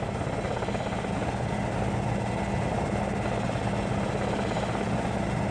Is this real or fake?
real